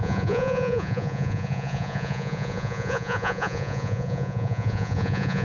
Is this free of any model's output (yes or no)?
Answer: no